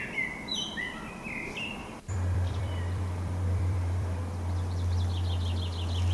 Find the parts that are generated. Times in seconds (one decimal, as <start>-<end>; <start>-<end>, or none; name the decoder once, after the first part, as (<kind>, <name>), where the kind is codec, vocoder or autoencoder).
0.5-4.2 (vocoder, BigVGAN v2)